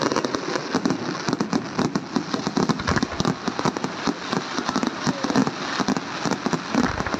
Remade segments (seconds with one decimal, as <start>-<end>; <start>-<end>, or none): none